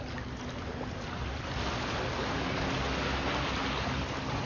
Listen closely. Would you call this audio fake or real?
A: real